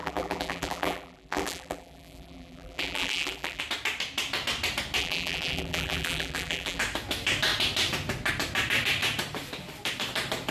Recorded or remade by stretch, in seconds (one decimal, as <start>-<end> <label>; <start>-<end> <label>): 0.0-3.6 remade; 3.6-5.0 recorded; 5.0-6.8 remade; 6.8-10.5 recorded